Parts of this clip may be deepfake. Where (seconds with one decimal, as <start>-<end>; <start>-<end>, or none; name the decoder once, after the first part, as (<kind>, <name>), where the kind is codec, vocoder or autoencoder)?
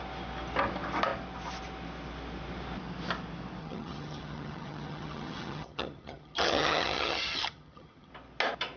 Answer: 3.6-8.1 (vocoder, HiFi-GAN)